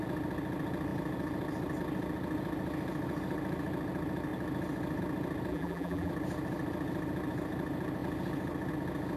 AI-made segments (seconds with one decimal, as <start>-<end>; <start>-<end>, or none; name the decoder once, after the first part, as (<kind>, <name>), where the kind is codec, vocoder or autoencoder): 5.5-6.1 (vocoder, BigVGAN v2)